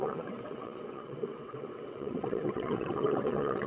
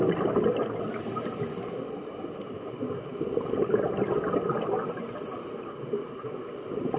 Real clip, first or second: second